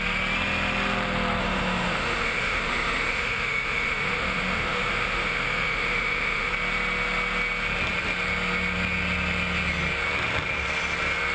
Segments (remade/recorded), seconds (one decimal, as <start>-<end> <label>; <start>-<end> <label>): 0.0-1.4 recorded; 1.4-6.5 remade; 6.5-11.3 recorded